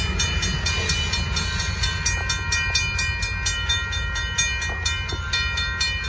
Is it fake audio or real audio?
real